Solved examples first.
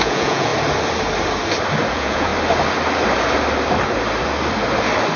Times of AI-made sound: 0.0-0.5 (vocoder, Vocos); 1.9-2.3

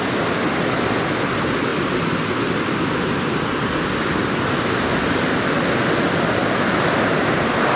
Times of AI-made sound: none

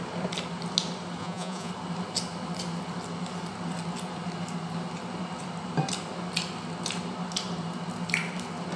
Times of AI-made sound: 1.2-1.7 (vocoder, Vocos)

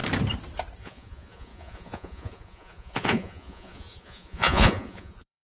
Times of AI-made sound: 0.8-5.4 (vocoder, Vocos)

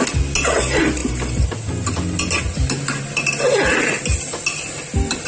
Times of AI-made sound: none